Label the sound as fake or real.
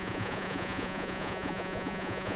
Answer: fake